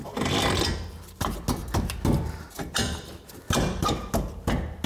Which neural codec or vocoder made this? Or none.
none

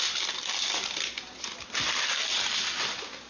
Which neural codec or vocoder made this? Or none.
none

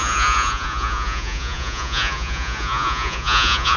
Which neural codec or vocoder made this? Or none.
vocoder, Vocos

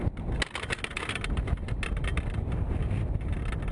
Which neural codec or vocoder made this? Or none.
none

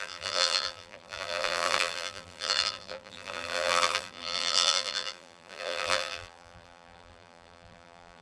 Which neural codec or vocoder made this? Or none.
vocoder, BigVGAN v2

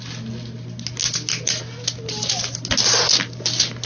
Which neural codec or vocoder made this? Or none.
none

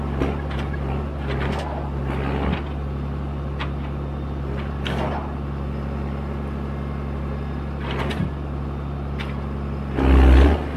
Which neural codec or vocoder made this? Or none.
none